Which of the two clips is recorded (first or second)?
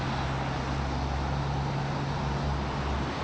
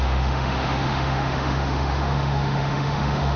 first